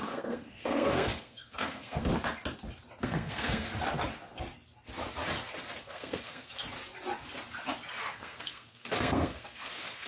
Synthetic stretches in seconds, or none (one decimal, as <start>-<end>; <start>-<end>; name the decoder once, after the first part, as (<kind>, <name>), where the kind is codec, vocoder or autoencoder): 0.0-2.1 (codec, SNAC); 3.0-3.7; 5.8-6.6; 8.0-10.1